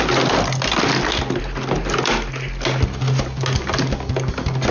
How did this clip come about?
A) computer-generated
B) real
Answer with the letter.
B